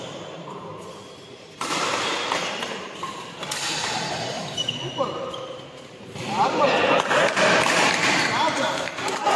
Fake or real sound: fake